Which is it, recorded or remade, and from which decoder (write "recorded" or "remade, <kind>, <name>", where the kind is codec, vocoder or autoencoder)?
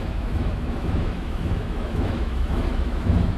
remade, autoencoder, DAC-VAE